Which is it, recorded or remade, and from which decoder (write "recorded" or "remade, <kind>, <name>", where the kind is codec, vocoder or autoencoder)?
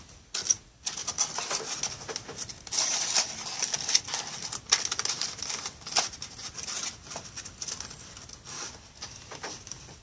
recorded